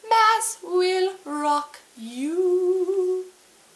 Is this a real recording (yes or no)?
yes